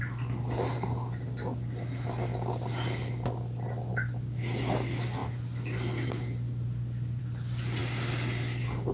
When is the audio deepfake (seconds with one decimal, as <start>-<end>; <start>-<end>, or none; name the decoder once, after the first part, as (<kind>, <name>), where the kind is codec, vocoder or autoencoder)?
none